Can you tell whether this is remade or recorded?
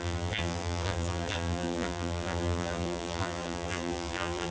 remade